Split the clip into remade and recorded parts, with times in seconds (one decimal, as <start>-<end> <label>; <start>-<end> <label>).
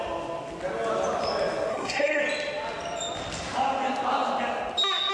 0.0-1.7 recorded; 1.7-2.2 remade; 2.2-5.1 recorded